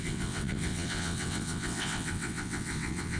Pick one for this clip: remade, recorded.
remade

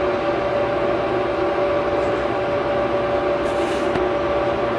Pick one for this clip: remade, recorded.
recorded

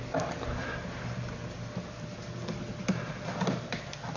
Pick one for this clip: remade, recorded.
recorded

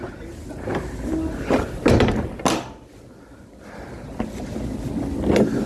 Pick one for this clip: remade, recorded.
recorded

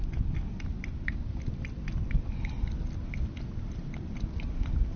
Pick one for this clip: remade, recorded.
recorded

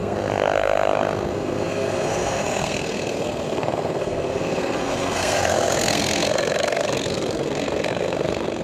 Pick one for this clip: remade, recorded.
remade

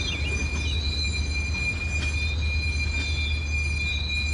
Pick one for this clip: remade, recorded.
recorded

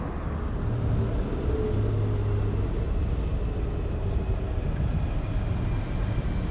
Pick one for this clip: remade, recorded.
recorded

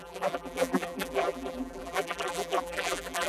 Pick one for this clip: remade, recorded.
remade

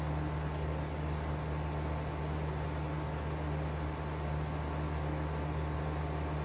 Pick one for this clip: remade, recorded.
recorded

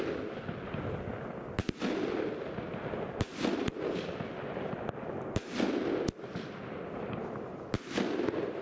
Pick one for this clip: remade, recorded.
recorded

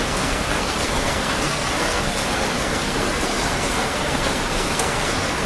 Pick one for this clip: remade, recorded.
remade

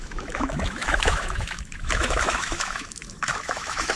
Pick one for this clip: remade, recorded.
remade